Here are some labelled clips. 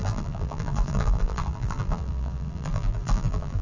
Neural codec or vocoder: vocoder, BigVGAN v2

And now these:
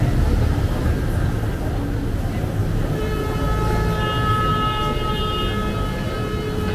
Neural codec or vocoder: none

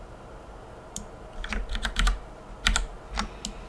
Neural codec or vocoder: none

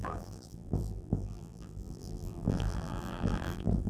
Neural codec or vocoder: vocoder, BigVGAN v2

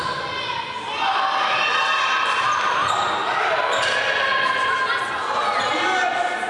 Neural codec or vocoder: none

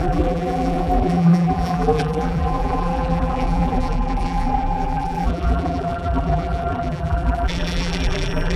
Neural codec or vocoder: vocoder, BigVGAN v2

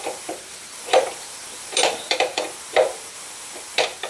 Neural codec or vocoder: vocoder, BigVGAN v2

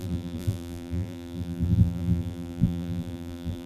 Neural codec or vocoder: vocoder, BigVGAN v2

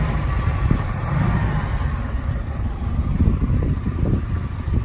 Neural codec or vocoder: vocoder, BigVGAN v2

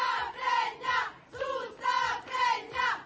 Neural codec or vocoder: none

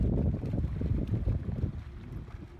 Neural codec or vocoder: none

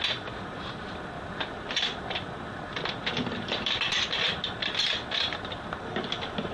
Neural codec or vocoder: none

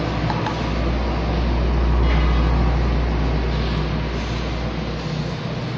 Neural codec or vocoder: none